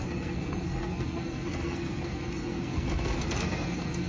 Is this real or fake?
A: fake